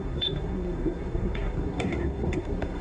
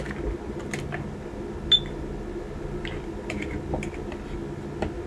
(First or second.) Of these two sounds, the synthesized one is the first